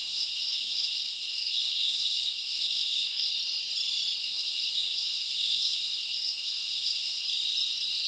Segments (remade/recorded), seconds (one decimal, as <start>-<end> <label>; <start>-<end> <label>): 0.0-3.3 remade; 3.3-4.2 recorded; 4.2-7.2 remade; 7.2-8.1 recorded